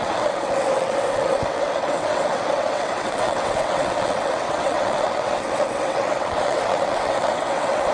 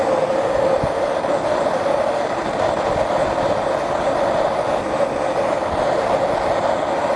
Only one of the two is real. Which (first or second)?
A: second